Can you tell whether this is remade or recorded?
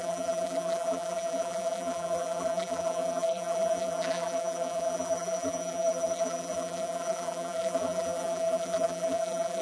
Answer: remade